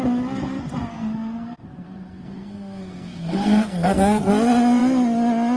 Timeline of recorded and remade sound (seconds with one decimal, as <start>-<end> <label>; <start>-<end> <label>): 0.0-0.9 recorded; 0.9-4.3 remade; 4.3-5.6 recorded